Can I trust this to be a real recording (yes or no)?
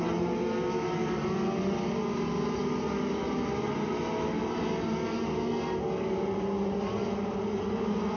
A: yes